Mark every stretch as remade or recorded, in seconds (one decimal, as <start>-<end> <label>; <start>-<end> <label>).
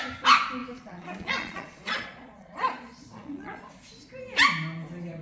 0.0-0.6 recorded; 0.6-3.7 remade; 3.7-5.2 recorded